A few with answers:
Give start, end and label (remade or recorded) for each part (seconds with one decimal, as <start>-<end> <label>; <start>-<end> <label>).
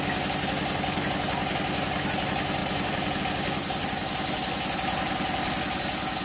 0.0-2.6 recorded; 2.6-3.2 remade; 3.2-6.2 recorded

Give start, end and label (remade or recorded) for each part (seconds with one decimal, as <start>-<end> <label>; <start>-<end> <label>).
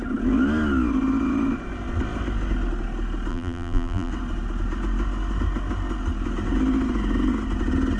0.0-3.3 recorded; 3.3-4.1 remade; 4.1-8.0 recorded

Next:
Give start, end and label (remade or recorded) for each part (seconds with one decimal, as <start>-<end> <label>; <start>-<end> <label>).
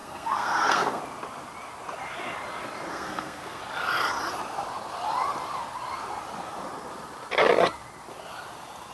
0.0-1.0 remade; 1.0-2.9 recorded; 2.9-3.6 remade; 3.6-8.9 recorded